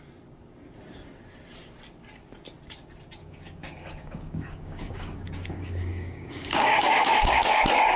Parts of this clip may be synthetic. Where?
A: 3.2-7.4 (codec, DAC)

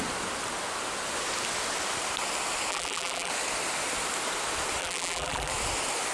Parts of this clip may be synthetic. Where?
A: 2.7-3.3 (vocoder, BigVGAN v2); 4.8-5.5

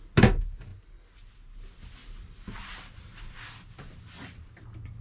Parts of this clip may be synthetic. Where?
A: none

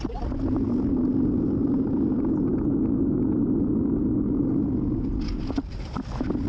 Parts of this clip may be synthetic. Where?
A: 0.0-1.1 (vocoder, BigVGAN v2); 1.6-2.5; 5.6-6.5

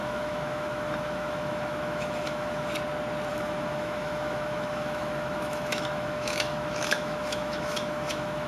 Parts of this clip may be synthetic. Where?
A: 0.0-2.7 (autoencoder, DAC-VAE); 3.3-8.5

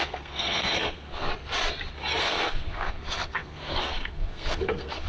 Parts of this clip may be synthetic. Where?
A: 0.0-1.3 (codec, SNAC); 2.2-5.1

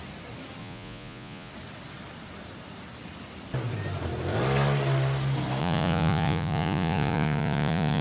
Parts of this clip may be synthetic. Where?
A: 0.6-1.5 (vocoder, Vocos); 5.6-8.0

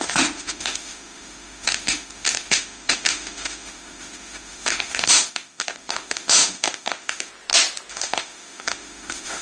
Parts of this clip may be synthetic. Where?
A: 0.0-7.3 (autoencoder, DAC-VAE); 7.9-9.4